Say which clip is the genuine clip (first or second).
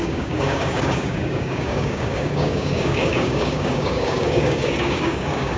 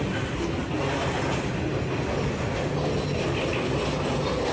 second